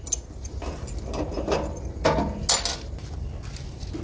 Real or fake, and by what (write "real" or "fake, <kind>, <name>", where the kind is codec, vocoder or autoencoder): real